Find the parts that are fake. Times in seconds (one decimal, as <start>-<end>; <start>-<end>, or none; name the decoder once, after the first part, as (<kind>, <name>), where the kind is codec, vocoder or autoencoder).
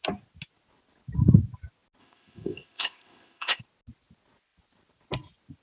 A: 2.0-3.6 (codec, ZipCodec)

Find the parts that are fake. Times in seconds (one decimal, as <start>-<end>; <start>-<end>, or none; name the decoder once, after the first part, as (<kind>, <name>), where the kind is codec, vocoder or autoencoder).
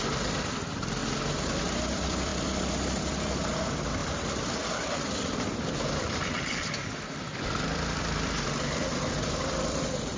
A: 0.0-1.0 (vocoder, BigVGAN v2); 1.6-10.2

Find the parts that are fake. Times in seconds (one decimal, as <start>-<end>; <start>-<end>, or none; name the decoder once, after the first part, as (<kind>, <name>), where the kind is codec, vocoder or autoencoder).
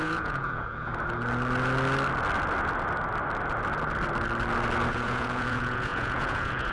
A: 0.0-0.9 (vocoder, Vocos); 4.9-6.7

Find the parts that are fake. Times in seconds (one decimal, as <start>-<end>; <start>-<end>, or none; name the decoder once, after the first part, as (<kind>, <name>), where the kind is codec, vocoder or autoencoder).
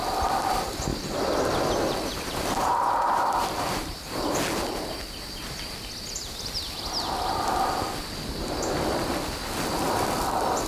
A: 2.1-4.3 (vocoder, BigVGAN v2)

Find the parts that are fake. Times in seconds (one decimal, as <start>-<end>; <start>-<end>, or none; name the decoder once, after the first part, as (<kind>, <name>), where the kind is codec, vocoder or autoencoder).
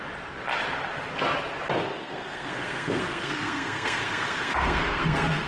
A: 1.9-5.5 (codec, SNAC)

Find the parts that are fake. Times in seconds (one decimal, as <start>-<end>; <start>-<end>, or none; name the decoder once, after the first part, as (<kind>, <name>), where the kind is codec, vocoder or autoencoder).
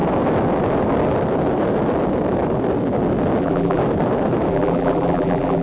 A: 3.4-3.8 (vocoder, BigVGAN v2); 4.5-5.6